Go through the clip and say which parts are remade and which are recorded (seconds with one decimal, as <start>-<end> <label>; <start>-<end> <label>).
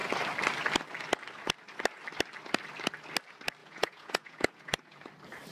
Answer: 0.0-3.6 recorded; 3.6-5.0 remade; 5.0-5.5 recorded